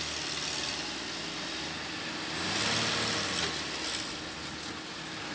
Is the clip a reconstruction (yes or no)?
no